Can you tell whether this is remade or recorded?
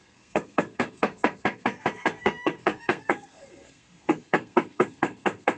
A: remade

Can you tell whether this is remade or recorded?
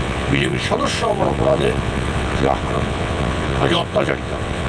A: remade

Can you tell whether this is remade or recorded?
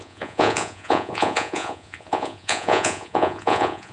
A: remade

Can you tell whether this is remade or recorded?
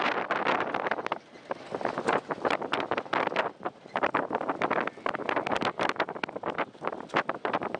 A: recorded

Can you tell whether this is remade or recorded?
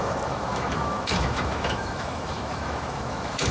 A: remade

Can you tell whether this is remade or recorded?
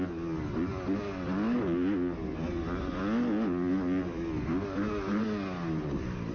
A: recorded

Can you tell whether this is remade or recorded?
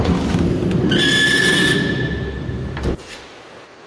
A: recorded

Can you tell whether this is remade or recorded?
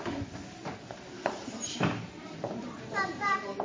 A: remade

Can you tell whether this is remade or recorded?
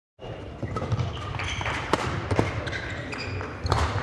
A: remade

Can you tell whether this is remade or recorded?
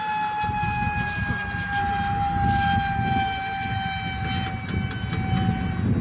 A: recorded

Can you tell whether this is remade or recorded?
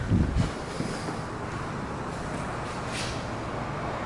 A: recorded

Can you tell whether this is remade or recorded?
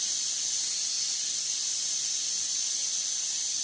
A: recorded